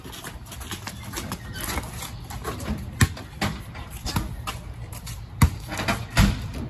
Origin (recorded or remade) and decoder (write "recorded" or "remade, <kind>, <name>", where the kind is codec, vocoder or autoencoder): recorded